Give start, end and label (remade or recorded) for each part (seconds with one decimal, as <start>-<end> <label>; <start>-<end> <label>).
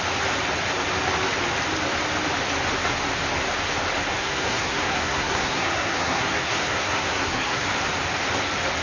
0.0-4.1 recorded; 4.1-7.6 remade; 7.6-8.8 recorded